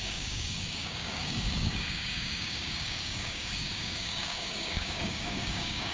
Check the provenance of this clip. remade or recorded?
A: remade